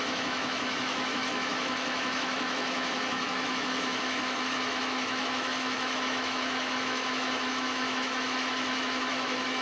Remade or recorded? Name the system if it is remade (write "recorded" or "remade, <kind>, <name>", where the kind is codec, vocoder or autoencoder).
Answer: remade, autoencoder, DAC-VAE